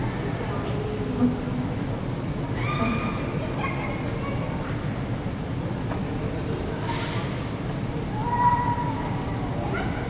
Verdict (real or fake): real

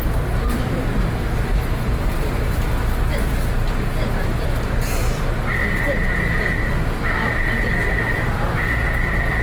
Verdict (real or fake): real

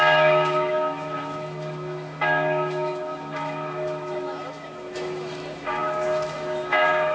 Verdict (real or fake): fake